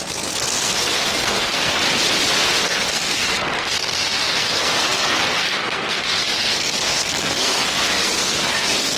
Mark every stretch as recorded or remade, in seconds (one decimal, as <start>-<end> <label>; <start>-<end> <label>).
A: 0.0-1.8 remade; 1.8-2.6 recorded; 2.6-9.0 remade